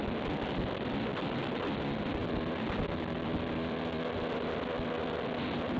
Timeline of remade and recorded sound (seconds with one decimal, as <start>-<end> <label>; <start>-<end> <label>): 0.0-5.8 recorded